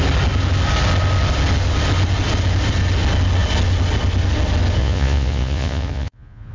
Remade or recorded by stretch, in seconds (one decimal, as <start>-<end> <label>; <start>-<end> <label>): 0.0-4.8 recorded; 4.8-6.5 remade